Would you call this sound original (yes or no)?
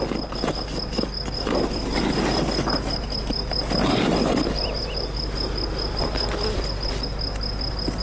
yes